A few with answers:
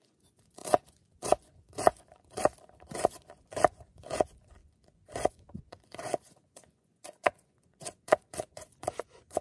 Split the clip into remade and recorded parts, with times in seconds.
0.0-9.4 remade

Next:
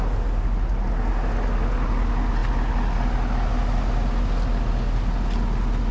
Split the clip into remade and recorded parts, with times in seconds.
0.0-5.9 recorded